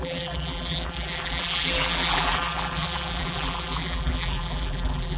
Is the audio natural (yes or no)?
no